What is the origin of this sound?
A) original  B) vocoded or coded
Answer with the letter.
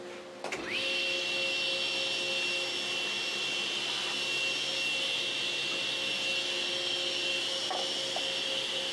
A